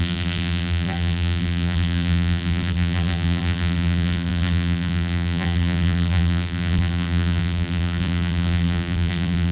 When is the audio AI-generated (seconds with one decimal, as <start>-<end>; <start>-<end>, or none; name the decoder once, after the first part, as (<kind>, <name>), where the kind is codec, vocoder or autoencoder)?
0.0-9.5 (vocoder, BigVGAN v2)